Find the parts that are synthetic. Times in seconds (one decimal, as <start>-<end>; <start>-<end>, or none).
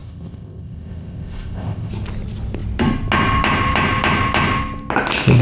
0.0-1.9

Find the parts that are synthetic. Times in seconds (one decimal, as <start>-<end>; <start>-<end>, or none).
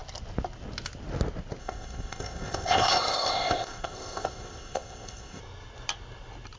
1.6-5.4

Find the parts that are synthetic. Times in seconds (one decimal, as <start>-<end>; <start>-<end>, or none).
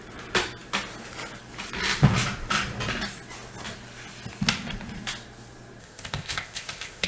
5.8-7.1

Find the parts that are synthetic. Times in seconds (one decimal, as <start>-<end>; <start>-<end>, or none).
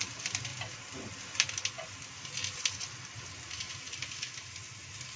none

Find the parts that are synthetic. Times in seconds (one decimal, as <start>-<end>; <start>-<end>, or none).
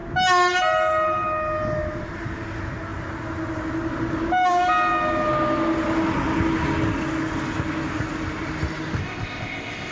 9.0-9.9